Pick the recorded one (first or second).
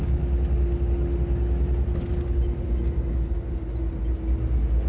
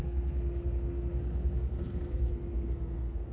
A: first